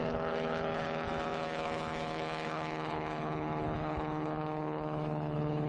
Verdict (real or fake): fake